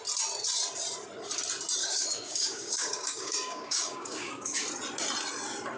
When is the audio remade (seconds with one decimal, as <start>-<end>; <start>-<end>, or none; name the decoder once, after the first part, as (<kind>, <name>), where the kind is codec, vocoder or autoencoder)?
1.8-4.6 (codec, DAC)